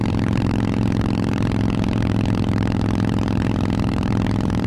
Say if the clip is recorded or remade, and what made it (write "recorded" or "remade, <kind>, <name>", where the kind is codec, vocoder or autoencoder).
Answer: remade, vocoder, BigVGAN v2